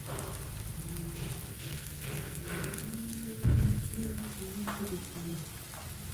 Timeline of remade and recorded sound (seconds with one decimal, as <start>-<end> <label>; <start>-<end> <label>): 0.0-1.5 recorded; 1.5-4.2 remade; 4.2-6.1 recorded